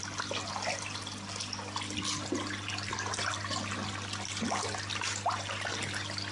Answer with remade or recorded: recorded